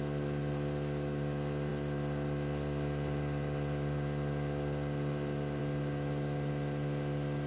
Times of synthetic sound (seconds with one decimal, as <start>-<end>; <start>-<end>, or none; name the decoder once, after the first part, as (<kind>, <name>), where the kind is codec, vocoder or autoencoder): none